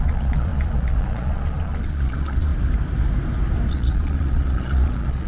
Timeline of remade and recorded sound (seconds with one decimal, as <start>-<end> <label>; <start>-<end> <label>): 0.0-2.5 remade; 2.5-3.7 recorded; 3.7-5.3 remade